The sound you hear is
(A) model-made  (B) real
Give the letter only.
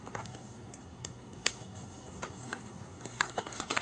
A